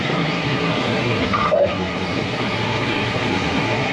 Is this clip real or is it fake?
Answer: fake